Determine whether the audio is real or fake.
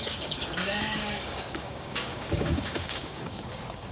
fake